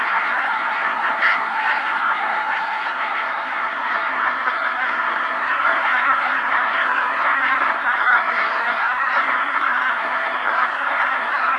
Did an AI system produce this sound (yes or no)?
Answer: yes